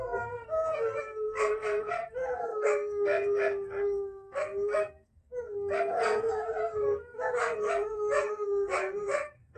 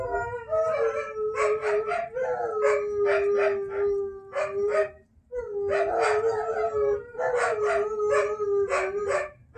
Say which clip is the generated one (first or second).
first